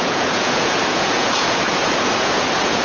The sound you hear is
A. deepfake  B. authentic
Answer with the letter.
A